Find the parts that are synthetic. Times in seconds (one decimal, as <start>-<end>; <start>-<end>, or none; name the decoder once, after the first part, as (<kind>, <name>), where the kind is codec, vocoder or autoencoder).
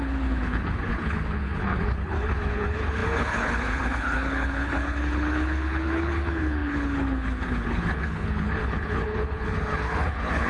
0.0-10.5 (codec, HILCodec)